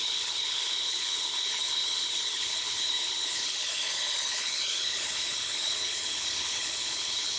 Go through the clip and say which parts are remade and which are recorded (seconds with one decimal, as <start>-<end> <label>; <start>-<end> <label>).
0.0-7.4 remade